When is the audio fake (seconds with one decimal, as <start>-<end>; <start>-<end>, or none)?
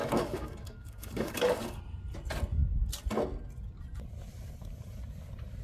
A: 0.0-1.8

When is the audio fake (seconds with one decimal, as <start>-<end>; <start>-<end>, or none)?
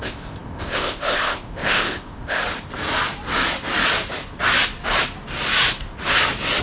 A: 0.0-2.4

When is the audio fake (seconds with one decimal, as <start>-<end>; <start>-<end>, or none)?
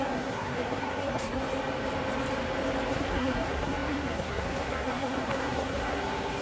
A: 0.0-1.4; 2.9-6.4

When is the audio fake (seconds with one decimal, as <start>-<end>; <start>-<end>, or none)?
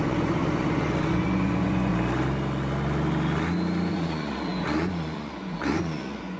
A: 0.0-1.9; 3.9-6.4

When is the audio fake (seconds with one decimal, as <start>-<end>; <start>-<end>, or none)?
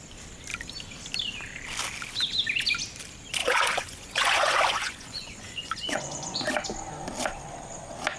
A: 3.4-6.4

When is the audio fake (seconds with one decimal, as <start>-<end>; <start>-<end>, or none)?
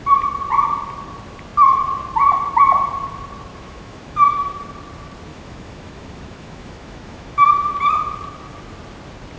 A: 3.5-4.5; 5.3-7.8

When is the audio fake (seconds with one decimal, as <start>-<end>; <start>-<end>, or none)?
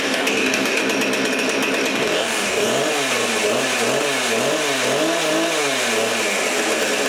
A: 0.0-0.8; 1.9-2.7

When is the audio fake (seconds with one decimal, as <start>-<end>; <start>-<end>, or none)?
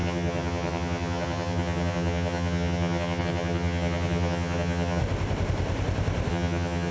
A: 0.0-5.0; 6.3-6.9